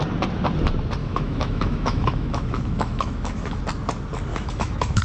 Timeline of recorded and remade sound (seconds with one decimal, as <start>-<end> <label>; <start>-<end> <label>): 0.0-1.0 recorded; 1.0-3.6 remade; 3.6-4.3 recorded; 4.3-5.0 remade